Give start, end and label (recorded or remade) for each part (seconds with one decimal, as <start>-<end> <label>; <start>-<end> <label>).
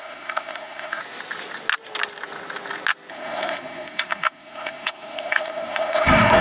0.0-1.0 remade; 1.0-3.1 recorded; 3.1-6.4 remade